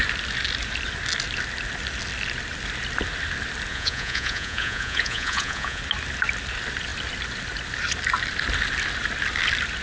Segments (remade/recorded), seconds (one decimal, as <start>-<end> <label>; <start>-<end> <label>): 0.0-3.7 recorded; 3.7-5.8 remade; 5.8-9.8 recorded